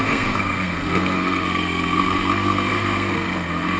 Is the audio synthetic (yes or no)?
yes